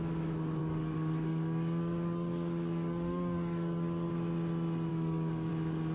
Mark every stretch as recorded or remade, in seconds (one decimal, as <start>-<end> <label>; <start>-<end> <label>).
0.0-0.6 recorded; 0.6-4.1 remade; 4.1-4.9 recorded; 4.9-5.5 remade; 5.5-5.9 recorded